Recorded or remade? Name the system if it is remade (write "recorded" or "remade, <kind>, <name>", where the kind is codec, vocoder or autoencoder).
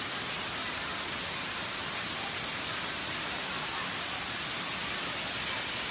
recorded